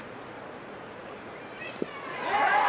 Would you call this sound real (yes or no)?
no